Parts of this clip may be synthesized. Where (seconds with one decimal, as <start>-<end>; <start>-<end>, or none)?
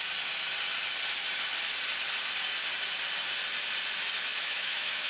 4.3-5.1